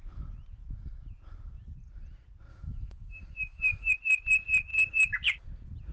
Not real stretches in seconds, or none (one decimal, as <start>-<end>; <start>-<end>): 2.5-3.9